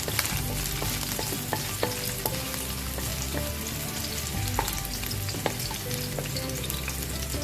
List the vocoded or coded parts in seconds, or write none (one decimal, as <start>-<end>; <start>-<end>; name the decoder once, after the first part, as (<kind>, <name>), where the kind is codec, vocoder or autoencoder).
none